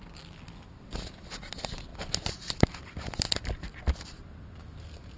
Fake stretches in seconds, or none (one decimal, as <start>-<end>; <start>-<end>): none